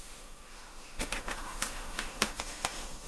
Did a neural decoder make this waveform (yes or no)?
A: yes